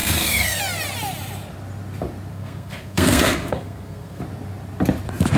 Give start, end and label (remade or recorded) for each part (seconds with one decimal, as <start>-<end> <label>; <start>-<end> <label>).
0.0-0.6 remade; 0.6-2.3 recorded; 2.3-4.2 remade; 4.2-5.4 recorded